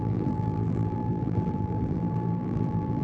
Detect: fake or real fake